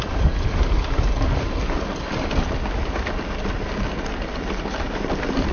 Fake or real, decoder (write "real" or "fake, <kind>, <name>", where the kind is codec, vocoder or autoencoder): real